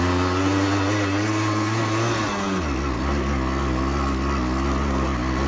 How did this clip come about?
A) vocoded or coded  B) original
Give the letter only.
B